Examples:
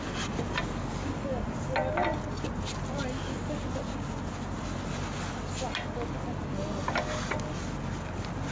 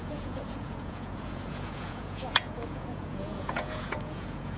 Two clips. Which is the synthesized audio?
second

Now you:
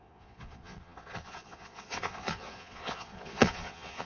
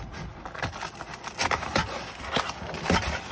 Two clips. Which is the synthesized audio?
first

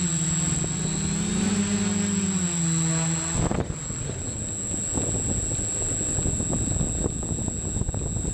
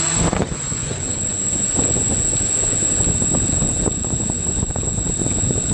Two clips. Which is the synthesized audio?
second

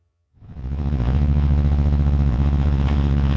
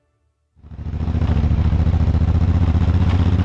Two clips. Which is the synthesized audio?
first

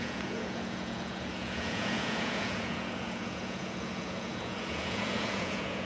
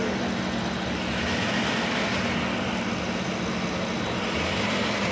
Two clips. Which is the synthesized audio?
first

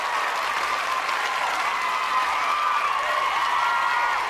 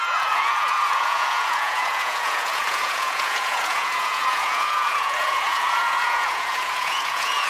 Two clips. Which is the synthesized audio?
second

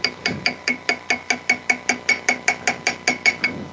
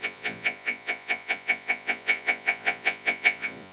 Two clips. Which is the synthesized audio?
second